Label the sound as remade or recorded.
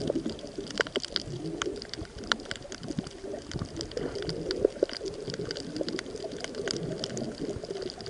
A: recorded